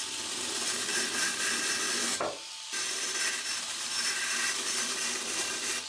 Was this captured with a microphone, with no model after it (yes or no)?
no